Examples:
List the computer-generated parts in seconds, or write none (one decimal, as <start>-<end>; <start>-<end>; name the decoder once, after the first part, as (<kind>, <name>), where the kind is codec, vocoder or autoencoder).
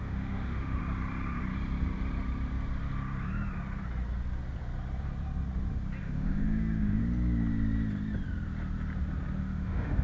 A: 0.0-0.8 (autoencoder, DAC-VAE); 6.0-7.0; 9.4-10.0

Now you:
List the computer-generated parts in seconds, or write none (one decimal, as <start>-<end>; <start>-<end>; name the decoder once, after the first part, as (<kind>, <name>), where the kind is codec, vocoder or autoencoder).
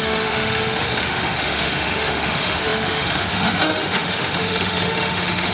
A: 0.0-5.5 (autoencoder, DAC-VAE)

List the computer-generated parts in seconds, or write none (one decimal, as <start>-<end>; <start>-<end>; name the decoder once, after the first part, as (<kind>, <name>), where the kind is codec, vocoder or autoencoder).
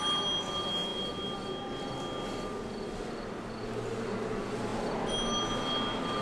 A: none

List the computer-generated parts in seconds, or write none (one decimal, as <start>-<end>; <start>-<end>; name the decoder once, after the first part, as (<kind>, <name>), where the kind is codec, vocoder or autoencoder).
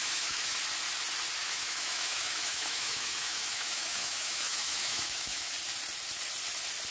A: 0.0-0.6 (autoencoder, DAC-VAE); 1.4-5.5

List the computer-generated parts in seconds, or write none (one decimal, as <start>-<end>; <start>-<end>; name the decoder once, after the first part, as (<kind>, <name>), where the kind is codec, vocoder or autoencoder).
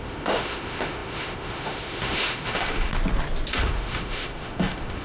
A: 0.0-2.9 (autoencoder, DAC-VAE); 3.5-5.0